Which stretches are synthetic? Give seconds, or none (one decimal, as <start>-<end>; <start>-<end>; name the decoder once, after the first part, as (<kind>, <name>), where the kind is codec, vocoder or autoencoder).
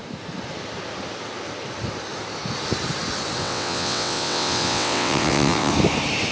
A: 3.4-5.7 (vocoder, WaveNeXt)